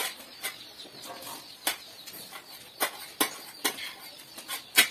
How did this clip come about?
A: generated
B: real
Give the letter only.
B